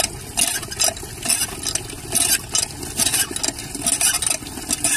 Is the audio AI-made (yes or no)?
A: no